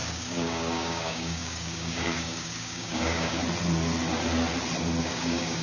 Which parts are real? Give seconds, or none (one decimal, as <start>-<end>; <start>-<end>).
3.4-5.0